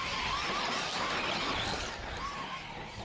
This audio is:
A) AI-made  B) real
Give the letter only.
B